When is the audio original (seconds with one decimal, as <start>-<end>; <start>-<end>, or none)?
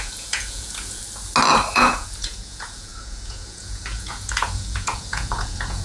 1.0-1.7